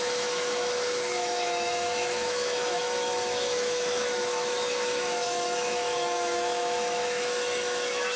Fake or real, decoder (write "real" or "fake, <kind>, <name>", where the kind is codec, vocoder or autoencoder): fake, autoencoder, DAC-VAE